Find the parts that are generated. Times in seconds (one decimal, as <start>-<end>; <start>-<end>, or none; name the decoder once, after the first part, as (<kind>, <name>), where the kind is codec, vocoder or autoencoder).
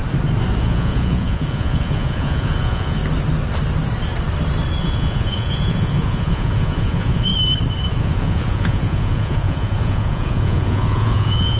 0.6-3.0 (vocoder, Vocos); 4.8-7.3; 7.9-11.6